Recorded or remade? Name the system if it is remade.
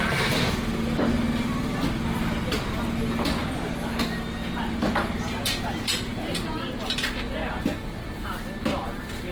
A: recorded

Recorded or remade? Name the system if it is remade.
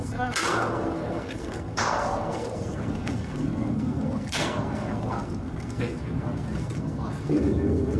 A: remade, codec, SNAC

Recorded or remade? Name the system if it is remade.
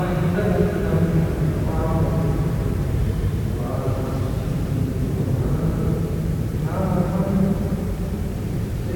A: remade, vocoder, BigVGAN v2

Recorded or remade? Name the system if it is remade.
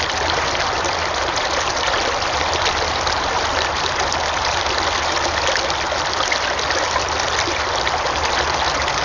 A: recorded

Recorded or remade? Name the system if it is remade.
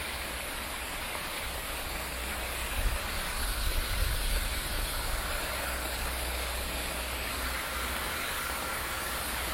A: remade, codec, DAC